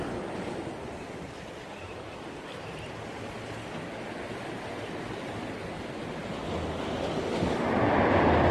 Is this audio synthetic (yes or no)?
no